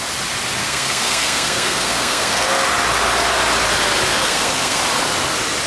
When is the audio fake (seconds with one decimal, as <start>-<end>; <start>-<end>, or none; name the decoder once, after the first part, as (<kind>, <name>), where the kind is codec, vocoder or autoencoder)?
0.6-2.5 (codec, SNAC); 4.1-4.8